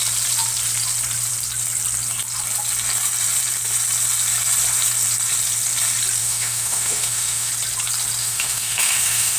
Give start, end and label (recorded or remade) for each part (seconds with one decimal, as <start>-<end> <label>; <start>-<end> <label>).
0.0-6.2 recorded; 6.2-7.5 remade; 7.5-8.2 recorded; 8.2-9.4 remade